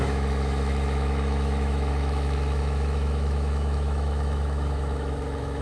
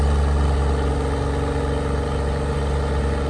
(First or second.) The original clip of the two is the second